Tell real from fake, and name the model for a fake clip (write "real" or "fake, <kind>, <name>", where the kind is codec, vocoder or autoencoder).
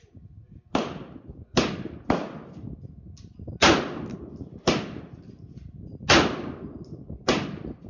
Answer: real